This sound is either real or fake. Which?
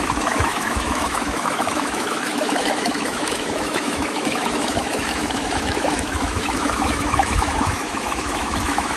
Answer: fake